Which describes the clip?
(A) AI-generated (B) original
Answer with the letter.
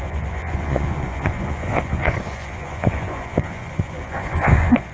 A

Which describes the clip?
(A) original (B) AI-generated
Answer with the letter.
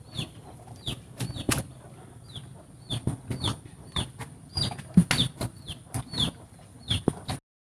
A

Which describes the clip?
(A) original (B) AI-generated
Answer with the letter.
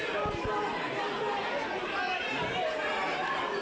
A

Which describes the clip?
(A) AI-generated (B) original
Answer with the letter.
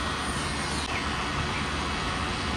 B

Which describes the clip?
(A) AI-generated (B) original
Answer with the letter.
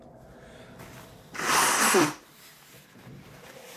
B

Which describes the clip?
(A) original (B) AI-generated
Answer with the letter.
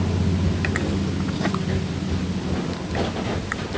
A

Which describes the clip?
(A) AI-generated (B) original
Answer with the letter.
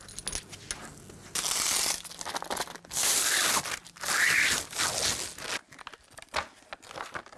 B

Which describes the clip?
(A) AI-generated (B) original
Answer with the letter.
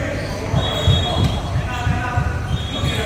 B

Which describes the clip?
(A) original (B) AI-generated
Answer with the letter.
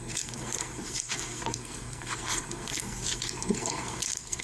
B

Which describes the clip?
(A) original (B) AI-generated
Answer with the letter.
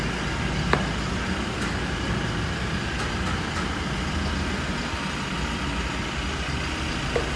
A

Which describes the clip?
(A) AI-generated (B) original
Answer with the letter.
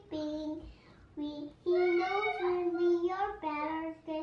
B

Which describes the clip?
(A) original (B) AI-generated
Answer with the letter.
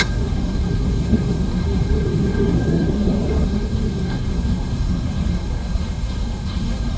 B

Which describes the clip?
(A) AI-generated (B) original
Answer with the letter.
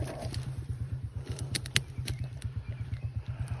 A